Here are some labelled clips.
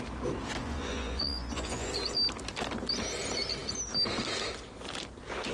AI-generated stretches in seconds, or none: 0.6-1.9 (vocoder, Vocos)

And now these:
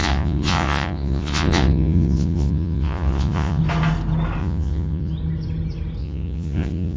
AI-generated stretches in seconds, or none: 0.0-3.6 (vocoder, Vocos); 4.4-5.1; 6.0-7.0

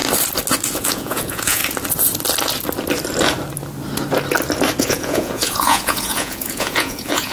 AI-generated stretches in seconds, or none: 0.7-1.6 (vocoder, Vocos); 4.8-7.3